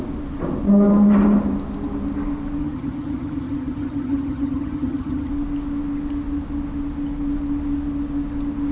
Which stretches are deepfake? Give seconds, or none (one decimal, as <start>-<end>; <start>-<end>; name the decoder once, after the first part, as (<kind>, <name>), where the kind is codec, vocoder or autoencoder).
2.6-5.3 (vocoder, HiFi-GAN)